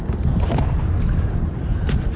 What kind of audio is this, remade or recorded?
recorded